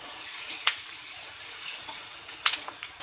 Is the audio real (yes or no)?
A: no